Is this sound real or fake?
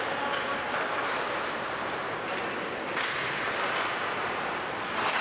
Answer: real